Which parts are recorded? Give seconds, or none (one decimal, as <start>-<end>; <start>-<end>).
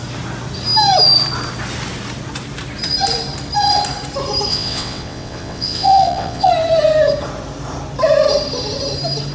0.0-4.5; 6.5-9.3